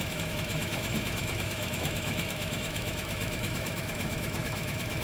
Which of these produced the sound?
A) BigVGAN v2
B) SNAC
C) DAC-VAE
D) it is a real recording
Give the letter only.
C